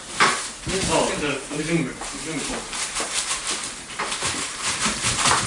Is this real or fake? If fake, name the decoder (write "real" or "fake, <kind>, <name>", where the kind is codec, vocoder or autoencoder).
fake, vocoder, BigVGAN v2